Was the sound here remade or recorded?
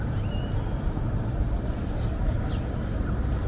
remade